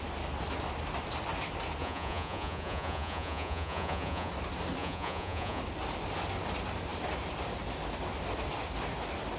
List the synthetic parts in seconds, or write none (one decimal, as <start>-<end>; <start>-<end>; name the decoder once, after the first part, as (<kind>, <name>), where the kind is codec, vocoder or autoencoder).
1.8-4.3 (vocoder, Vocos); 4.8-5.6